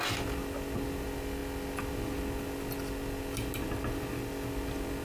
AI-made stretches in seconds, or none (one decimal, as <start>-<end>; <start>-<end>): none